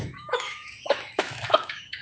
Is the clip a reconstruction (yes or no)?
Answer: yes